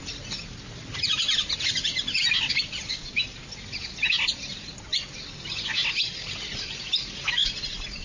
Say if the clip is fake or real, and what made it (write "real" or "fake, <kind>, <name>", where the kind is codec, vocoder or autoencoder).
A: real